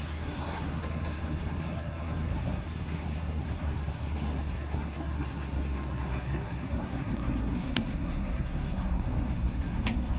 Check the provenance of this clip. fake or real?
fake